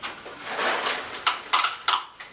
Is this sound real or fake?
real